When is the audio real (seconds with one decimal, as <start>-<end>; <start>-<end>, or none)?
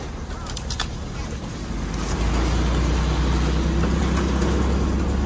0.0-5.3